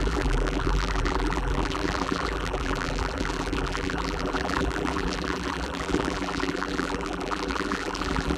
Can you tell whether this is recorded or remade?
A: remade